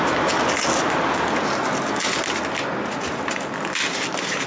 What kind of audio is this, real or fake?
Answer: real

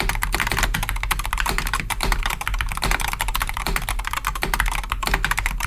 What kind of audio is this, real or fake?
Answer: real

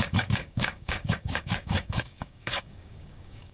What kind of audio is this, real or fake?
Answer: fake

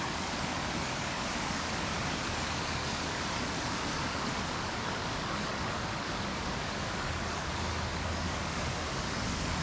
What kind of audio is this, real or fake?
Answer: fake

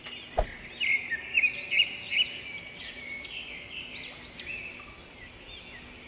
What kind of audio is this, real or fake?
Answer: real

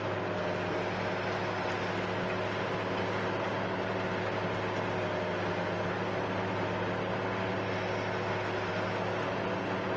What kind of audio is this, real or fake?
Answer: real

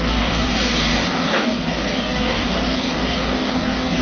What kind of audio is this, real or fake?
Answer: fake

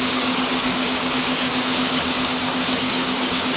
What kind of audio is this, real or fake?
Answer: fake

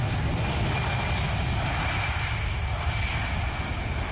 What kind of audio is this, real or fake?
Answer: real